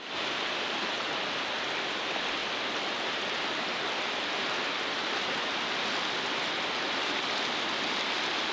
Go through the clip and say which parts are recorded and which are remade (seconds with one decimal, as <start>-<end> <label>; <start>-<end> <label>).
0.0-8.5 recorded